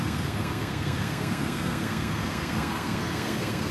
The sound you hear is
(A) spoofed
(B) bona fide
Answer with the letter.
A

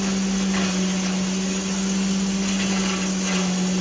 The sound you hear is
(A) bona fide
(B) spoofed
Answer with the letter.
A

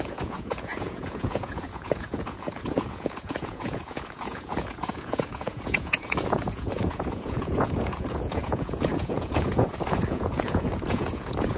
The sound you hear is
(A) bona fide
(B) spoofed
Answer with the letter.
B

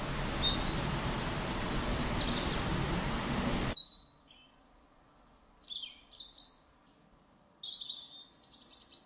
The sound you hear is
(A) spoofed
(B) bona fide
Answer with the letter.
B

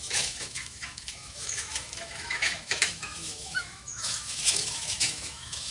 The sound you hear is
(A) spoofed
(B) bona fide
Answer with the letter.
A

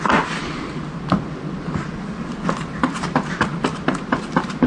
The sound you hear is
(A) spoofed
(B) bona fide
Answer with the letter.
B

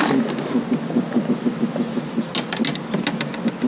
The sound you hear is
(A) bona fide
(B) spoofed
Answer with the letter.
A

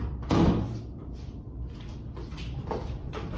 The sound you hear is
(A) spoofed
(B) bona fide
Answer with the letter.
A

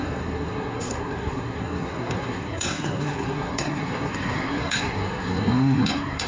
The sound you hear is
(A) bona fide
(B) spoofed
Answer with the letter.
B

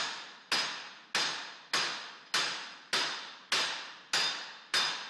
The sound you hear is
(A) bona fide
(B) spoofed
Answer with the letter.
A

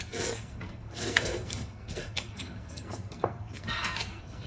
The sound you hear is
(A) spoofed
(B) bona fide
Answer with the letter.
A